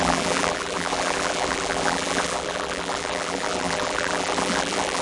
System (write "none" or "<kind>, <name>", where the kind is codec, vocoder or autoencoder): vocoder, BigVGAN v2